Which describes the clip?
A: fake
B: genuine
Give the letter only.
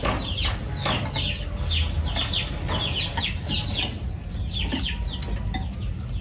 B